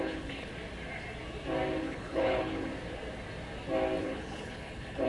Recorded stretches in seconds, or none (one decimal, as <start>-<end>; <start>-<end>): 0.5-1.8; 2.7-4.0